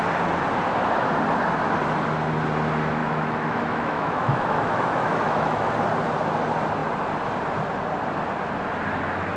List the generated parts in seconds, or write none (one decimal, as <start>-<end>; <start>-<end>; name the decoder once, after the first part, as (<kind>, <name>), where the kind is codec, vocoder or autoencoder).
3.0-5.7 (autoencoder, DAC-VAE)